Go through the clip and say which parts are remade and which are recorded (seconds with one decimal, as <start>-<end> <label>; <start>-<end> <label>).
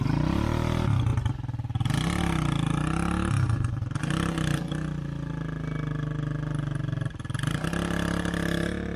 0.0-9.0 recorded